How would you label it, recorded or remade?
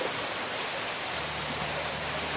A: recorded